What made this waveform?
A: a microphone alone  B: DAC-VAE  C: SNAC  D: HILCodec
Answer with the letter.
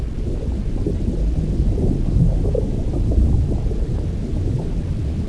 A